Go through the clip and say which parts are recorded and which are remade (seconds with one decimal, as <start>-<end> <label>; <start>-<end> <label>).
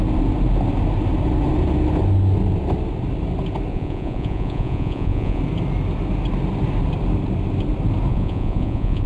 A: 0.0-3.7 recorded; 3.7-5.4 remade; 5.4-8.1 recorded; 8.1-9.1 remade